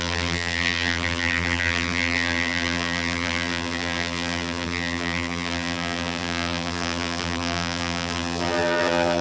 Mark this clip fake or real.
fake